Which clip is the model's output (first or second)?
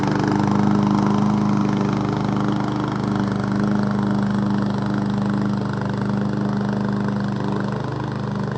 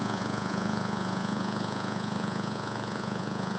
second